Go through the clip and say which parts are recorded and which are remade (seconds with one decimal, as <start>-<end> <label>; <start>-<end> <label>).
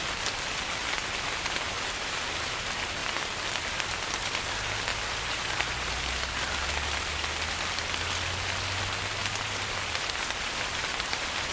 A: 0.0-4.9 recorded; 4.9-6.3 remade; 6.3-9.2 recorded; 9.2-11.5 remade